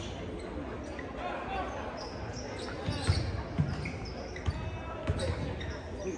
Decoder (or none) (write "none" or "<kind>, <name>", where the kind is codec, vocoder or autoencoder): none